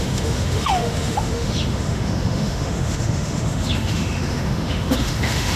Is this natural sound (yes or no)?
no